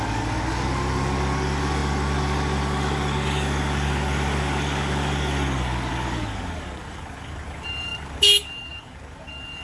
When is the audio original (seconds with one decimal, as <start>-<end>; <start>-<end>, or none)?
none